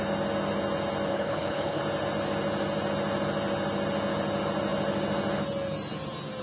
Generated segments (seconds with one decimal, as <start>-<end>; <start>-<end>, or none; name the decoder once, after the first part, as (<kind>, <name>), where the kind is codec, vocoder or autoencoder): 1.1-1.8 (codec, HILCodec)